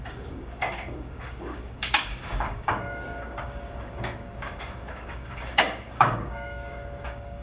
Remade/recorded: remade